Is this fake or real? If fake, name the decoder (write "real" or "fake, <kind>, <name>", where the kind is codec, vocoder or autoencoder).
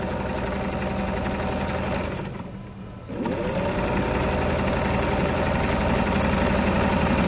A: real